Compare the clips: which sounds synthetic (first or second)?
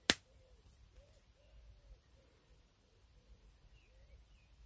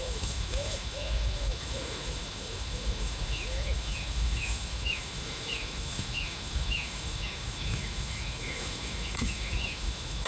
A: second